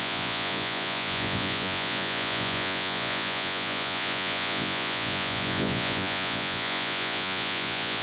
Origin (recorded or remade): remade